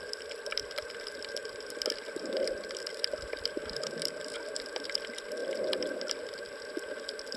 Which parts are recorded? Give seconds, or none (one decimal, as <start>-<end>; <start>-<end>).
0.0-7.4

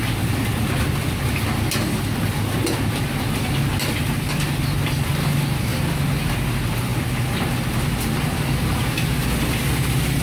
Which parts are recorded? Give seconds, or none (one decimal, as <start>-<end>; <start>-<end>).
0.0-10.2

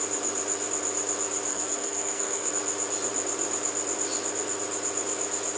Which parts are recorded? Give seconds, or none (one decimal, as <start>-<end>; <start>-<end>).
0.0-1.5; 2.5-5.6

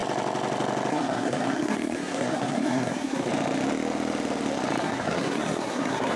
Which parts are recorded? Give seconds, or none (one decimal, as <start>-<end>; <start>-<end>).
0.0-0.9; 3.3-4.8

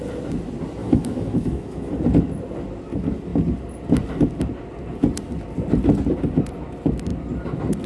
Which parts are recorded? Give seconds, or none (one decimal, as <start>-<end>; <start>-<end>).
0.0-0.8; 1.9-7.9

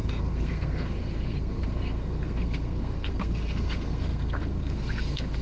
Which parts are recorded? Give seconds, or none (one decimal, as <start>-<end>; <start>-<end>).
none

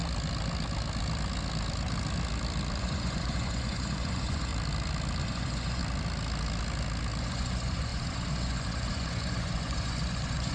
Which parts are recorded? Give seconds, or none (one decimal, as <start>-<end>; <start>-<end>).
0.0-2.8; 4.5-5.2; 5.8-7.2

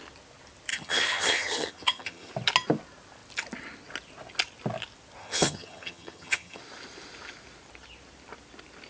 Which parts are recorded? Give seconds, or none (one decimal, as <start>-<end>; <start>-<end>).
0.0-0.7; 2.3-5.2; 6.6-8.9